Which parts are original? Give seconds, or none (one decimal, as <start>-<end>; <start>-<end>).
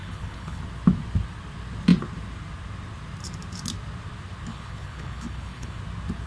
0.6-4.5; 5.8-6.3